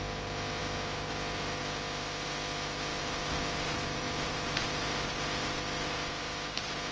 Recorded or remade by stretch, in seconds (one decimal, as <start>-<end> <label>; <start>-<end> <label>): 0.0-2.9 recorded; 2.9-6.2 remade; 6.2-6.9 recorded